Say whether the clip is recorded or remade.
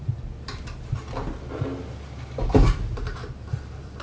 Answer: recorded